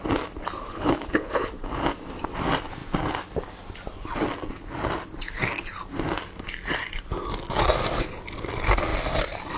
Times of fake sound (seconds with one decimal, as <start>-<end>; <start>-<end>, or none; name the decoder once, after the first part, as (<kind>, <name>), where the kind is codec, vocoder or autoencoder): 0.6-1.5 (codec, HILCodec)